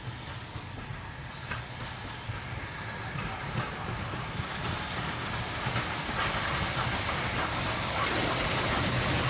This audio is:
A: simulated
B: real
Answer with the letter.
B